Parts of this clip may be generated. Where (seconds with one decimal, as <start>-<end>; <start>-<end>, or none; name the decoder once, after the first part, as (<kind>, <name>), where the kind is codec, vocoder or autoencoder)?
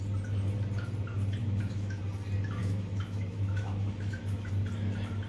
1.4-2.0 (autoencoder, DAC-VAE); 2.6-4.5